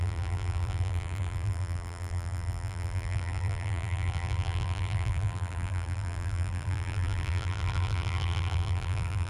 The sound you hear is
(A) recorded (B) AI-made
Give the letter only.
B